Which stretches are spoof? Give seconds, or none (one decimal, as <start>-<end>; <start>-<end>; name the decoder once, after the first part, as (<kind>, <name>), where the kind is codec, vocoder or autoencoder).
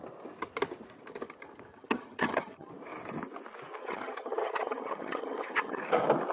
1.7-2.7 (vocoder, HiFi-GAN); 3.8-5.8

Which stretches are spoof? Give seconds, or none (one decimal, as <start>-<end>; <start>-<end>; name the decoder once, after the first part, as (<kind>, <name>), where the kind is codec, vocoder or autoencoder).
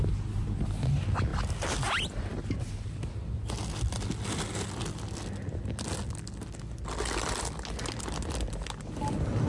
none